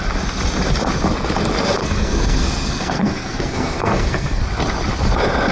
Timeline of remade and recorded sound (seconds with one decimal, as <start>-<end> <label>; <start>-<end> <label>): 0.0-1.8 recorded; 1.8-4.4 remade; 4.4-5.5 recorded